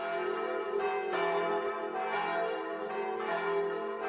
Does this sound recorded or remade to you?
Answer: recorded